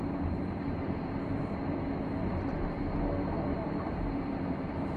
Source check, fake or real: fake